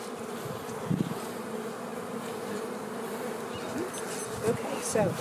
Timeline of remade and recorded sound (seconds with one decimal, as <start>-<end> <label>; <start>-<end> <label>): 0.0-5.2 recorded